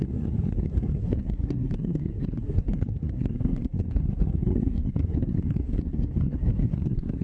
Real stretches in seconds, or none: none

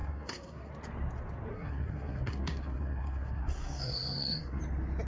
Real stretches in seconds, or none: 0.7-1.5; 4.6-5.1

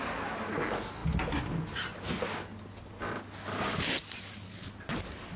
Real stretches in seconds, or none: 0.0-5.4

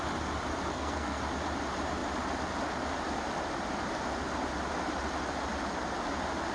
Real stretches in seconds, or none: 0.0-0.7; 1.2-6.5

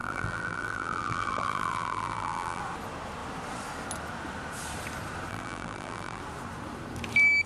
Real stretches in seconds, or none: 2.6-5.3; 6.2-7.5

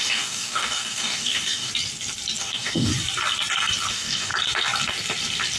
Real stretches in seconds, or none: 1.7-2.4; 2.9-3.9; 4.3-5.6